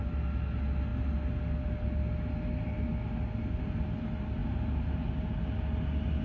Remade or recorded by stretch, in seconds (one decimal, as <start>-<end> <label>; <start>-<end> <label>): 0.0-6.2 recorded